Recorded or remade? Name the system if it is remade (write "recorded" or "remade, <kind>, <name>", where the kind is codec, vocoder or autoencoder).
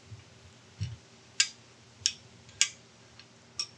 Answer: recorded